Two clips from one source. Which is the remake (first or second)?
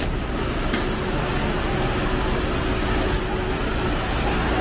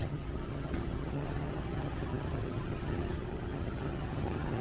second